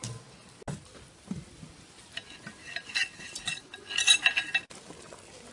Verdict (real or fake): real